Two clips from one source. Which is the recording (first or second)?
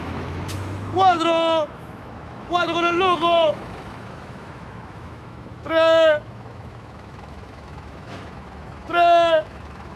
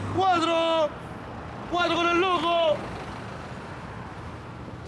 second